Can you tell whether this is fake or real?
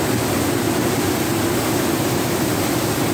real